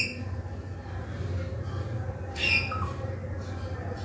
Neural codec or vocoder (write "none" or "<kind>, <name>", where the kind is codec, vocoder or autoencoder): none